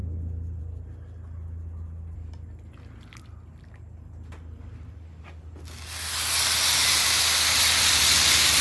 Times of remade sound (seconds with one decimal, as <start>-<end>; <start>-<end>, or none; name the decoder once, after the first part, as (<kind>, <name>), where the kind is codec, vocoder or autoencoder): none